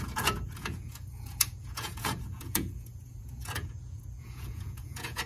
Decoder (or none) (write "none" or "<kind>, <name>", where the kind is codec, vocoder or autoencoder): vocoder, Vocos